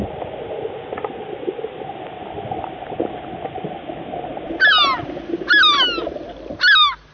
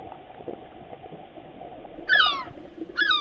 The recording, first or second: first